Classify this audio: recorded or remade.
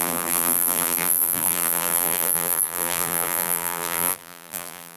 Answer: remade